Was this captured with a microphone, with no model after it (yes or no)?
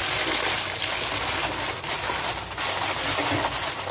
yes